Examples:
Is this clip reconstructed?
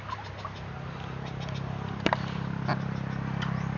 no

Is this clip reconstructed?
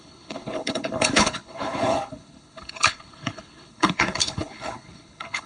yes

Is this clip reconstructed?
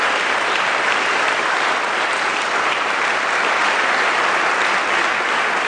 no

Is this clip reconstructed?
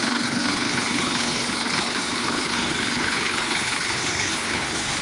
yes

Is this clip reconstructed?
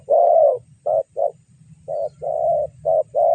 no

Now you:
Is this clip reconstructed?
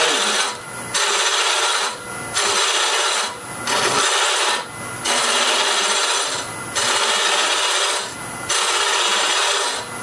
no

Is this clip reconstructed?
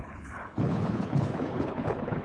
yes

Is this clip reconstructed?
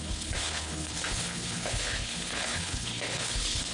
yes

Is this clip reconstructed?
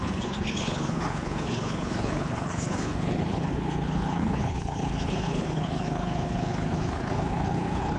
yes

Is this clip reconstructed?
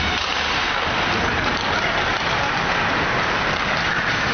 no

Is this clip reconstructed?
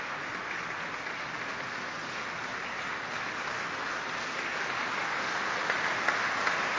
no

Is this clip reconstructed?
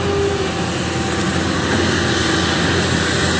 no